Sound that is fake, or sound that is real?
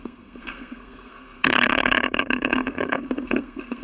fake